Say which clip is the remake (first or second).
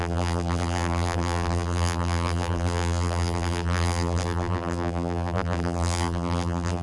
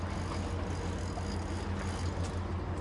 first